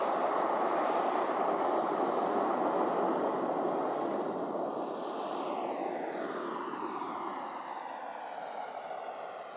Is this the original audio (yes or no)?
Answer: yes